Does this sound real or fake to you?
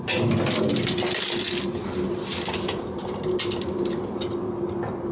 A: real